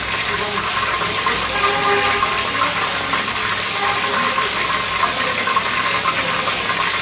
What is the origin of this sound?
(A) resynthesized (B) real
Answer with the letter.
B